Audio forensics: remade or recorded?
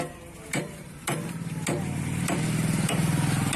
recorded